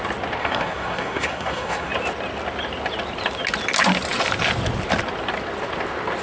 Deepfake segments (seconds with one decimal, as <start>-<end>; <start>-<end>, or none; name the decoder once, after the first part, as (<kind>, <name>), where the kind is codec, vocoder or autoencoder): 0.4-1.9 (codec, SNAC)